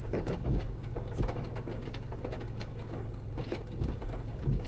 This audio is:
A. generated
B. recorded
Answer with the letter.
A